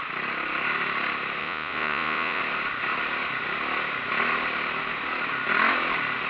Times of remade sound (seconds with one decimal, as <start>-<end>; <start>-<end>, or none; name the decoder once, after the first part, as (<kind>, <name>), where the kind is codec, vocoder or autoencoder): 1.4-2.4 (vocoder, Vocos)